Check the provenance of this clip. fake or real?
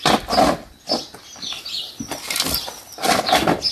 fake